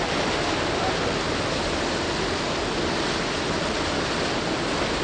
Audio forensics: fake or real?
real